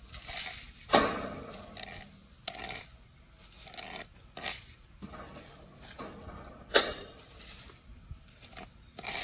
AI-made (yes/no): no